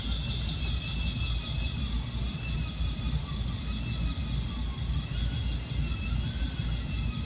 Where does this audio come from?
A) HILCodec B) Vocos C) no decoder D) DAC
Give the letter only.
C